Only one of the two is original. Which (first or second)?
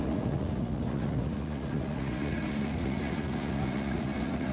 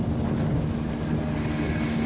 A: second